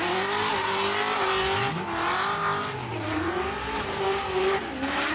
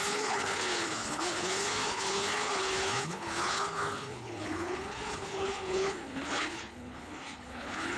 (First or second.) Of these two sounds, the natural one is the first